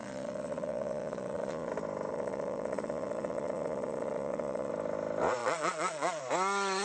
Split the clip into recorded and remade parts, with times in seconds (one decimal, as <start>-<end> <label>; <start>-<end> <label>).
0.0-1.7 remade; 1.7-2.1 recorded; 2.1-4.7 remade; 4.7-5.4 recorded; 5.4-6.2 remade; 6.2-6.8 recorded